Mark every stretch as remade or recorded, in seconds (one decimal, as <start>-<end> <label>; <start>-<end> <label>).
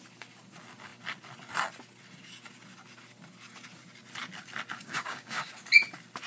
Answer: 0.0-4.8 recorded; 4.8-5.5 remade; 5.5-6.3 recorded